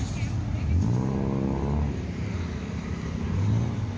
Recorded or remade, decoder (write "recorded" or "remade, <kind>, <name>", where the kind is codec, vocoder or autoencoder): recorded